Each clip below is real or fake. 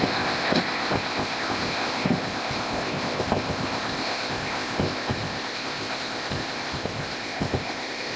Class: fake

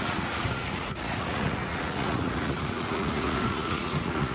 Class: fake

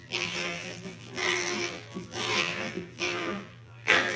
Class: fake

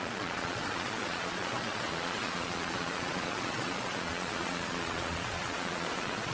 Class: fake